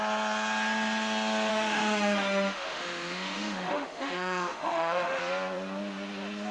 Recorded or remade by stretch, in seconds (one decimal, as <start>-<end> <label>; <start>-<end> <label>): 0.0-1.5 recorded; 1.5-5.2 remade; 5.2-6.5 recorded